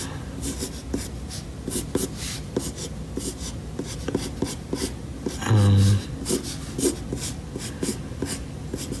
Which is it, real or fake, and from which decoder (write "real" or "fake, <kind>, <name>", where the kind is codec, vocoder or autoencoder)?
real